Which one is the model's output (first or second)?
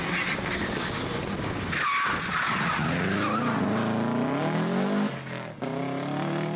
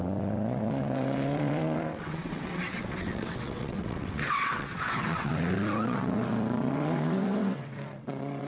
second